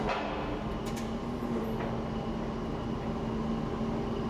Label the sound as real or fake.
real